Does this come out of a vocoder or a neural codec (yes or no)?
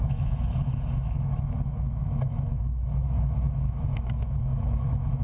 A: yes